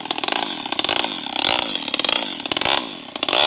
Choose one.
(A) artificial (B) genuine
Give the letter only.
B